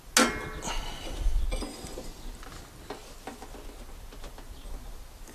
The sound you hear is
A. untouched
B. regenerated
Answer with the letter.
A